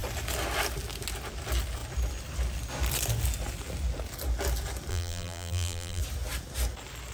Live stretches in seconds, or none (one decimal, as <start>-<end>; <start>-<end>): 0.0-4.9; 6.0-7.1

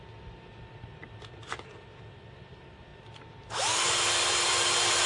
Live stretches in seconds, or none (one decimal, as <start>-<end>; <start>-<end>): 0.0-5.1

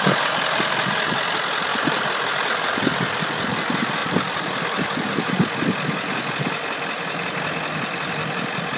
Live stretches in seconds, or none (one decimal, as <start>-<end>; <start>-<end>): 0.0-4.0; 5.3-8.8

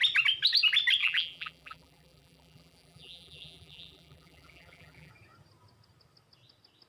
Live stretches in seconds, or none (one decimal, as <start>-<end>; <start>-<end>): 0.0-1.0; 5.1-6.9

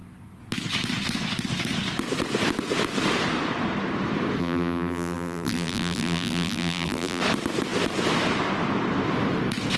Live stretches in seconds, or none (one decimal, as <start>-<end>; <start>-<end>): 0.0-4.4; 7.2-9.8

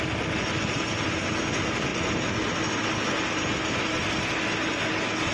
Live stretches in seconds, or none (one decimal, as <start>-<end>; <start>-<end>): 0.0-5.3